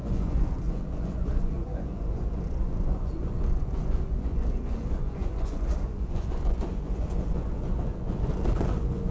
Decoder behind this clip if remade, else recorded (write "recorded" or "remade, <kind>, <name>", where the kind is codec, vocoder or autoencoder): remade, vocoder, Vocos